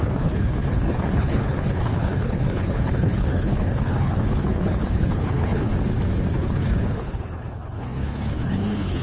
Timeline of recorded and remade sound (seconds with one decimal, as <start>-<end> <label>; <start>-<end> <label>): 0.0-5.7 remade; 5.7-6.3 recorded; 6.3-9.0 remade